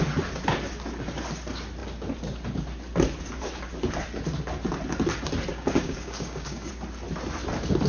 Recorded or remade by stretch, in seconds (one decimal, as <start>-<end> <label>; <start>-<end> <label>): 0.0-5.5 recorded; 5.5-6.7 remade; 6.7-7.9 recorded